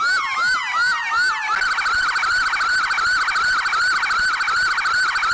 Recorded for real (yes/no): yes